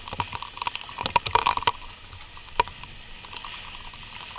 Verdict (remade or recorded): recorded